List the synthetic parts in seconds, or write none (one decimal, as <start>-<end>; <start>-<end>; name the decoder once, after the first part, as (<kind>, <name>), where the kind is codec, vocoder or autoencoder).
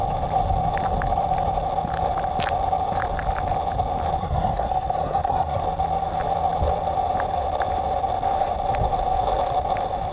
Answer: 4.2-5.6 (codec, SNAC)